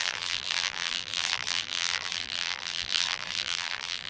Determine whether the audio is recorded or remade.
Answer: remade